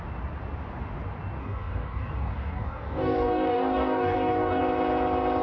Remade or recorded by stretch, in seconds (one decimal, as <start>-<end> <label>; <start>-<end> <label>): 0.0-1.4 recorded; 1.4-4.6 remade; 4.6-5.4 recorded